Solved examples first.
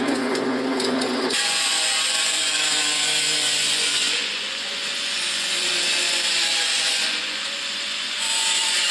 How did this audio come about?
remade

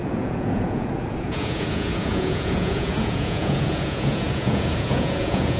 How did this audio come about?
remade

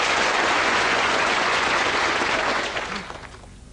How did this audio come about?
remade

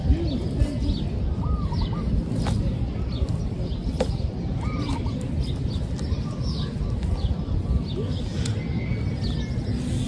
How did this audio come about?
recorded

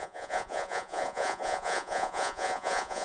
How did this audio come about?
remade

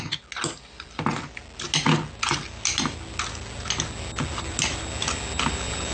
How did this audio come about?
recorded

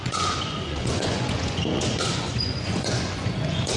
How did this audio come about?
remade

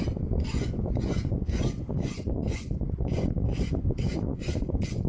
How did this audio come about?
remade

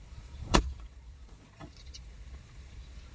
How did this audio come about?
remade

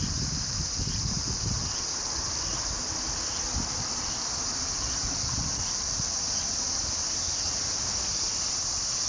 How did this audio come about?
recorded